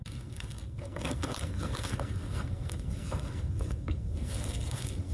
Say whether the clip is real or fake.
fake